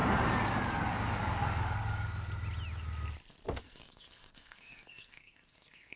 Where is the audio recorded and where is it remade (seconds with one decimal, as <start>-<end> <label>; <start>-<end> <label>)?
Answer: 0.0-3.6 recorded; 3.6-6.0 remade